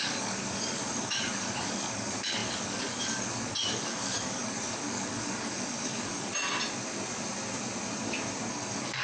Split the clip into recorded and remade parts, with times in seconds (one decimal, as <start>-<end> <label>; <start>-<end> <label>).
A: 0.0-6.3 remade; 6.3-8.5 recorded; 8.5-9.0 remade